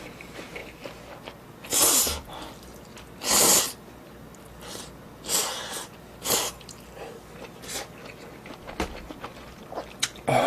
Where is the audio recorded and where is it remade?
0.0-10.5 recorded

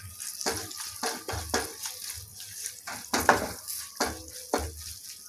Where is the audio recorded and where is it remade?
0.0-5.3 recorded

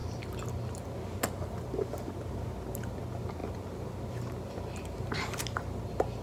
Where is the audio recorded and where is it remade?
0.0-6.2 recorded

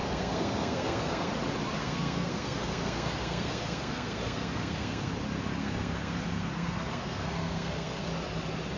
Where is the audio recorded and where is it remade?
0.0-1.3 remade; 1.3-1.8 recorded; 1.8-5.1 remade; 5.1-5.6 recorded; 5.6-8.1 remade; 8.1-8.8 recorded

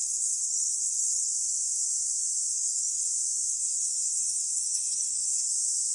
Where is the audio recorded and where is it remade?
0.0-1.3 remade; 1.3-2.5 recorded; 2.5-3.1 remade; 3.1-3.5 recorded; 3.5-5.5 remade; 5.5-5.9 recorded